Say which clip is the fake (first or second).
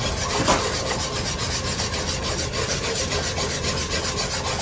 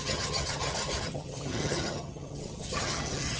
second